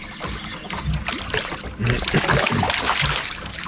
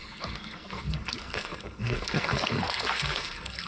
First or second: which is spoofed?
second